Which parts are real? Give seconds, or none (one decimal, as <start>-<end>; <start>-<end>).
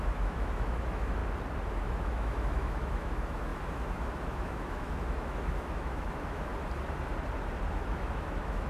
1.2-1.7; 6.5-7.7